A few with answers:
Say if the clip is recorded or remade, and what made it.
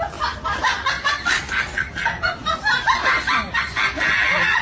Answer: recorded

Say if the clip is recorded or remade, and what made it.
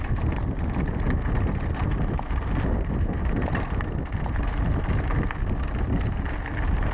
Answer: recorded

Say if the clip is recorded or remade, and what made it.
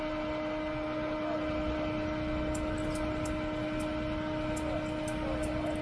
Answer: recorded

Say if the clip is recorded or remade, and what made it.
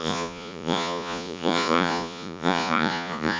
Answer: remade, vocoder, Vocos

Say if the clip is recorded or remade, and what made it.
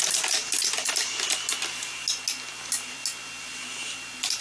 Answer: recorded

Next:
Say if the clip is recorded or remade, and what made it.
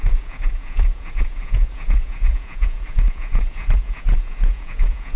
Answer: remade, vocoder, Vocos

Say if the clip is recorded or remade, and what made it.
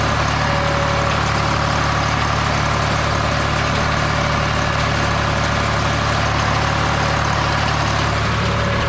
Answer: recorded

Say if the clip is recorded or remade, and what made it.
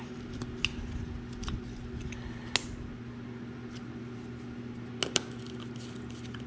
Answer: recorded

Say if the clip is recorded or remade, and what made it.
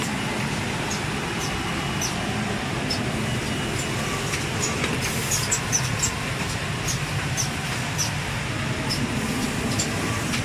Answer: recorded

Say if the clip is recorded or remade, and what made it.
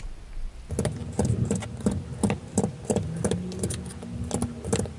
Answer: recorded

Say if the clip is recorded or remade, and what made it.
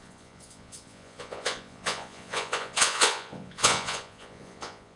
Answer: remade, vocoder, Vocos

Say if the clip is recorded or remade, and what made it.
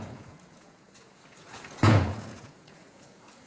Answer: remade, vocoder, Vocos